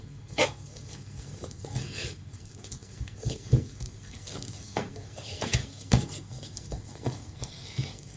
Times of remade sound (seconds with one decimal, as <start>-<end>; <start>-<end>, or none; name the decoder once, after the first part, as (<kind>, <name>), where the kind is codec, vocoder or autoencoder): 0.0-8.2 (codec, SNAC)